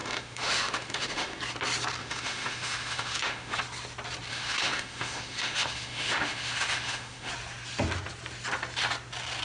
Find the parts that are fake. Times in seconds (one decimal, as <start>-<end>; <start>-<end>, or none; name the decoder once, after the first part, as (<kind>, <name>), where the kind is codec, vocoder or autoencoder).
0.0-1.4 (autoencoder, DAC-VAE); 2.0-3.6; 4.3-7.3